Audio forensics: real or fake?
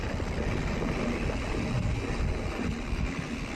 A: real